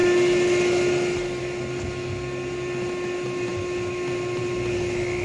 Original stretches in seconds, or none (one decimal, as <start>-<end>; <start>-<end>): 0.0-5.2